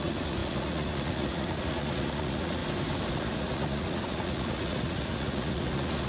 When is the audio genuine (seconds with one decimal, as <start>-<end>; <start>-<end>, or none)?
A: 2.6-3.1